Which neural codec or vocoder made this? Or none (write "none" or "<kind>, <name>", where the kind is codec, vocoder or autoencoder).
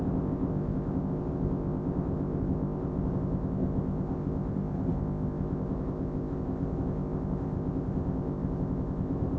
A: codec, ZipCodec